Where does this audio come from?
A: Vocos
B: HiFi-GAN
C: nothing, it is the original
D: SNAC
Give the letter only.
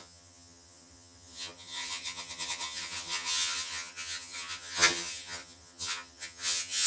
B